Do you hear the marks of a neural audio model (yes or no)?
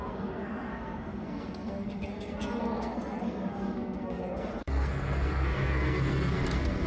yes